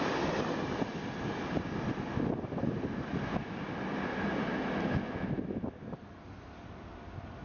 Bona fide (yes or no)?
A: yes